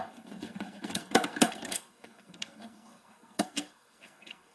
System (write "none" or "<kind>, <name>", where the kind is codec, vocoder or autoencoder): codec, SNAC